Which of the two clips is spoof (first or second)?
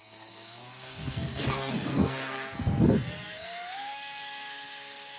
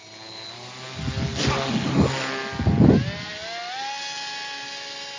first